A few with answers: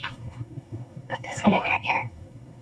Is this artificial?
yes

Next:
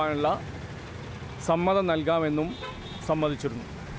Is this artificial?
no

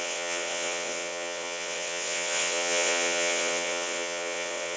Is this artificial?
yes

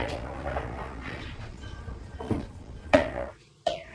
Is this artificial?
yes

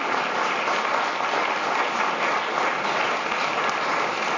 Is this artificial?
no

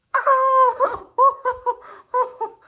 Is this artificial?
yes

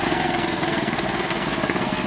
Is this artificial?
yes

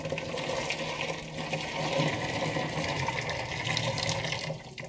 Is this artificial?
no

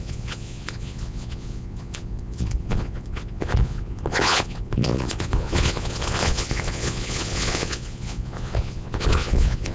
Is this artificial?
yes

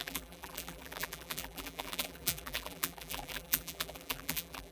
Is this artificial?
yes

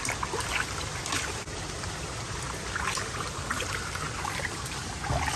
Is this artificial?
no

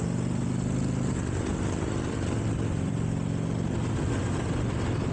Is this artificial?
no